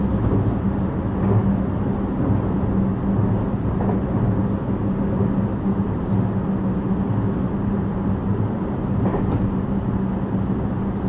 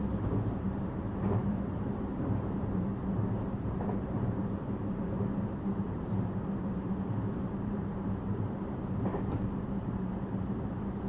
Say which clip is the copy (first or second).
second